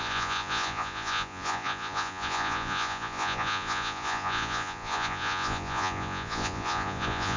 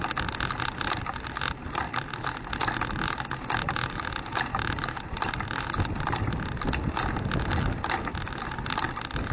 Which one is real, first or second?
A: second